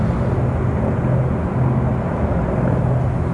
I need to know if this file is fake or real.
real